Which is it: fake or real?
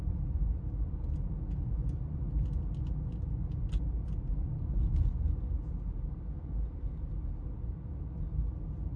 real